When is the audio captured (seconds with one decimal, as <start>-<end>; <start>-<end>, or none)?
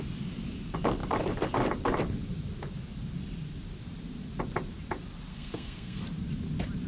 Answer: 0.0-5.3; 6.0-6.9